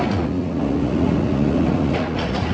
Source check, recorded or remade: remade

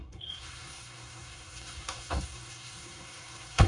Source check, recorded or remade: remade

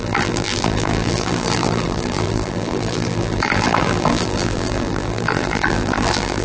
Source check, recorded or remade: remade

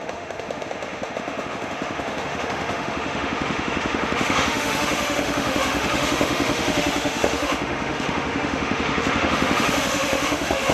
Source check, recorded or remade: remade